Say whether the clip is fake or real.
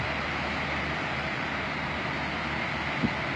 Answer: real